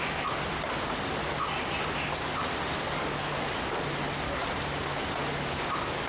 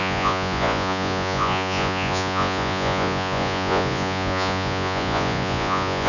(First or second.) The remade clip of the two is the second